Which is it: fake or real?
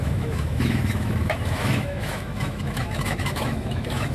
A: fake